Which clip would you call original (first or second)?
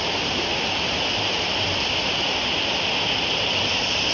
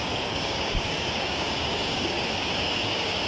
first